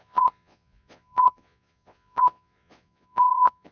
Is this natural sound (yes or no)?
no